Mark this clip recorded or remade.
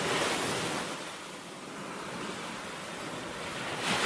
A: recorded